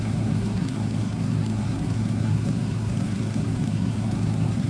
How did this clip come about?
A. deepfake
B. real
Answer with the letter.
A